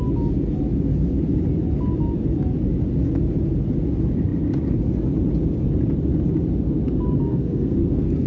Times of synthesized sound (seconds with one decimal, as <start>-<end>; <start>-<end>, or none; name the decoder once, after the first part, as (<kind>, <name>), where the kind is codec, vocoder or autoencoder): 7.3-8.3 (codec, SNAC)